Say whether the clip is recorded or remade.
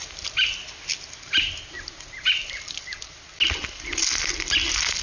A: recorded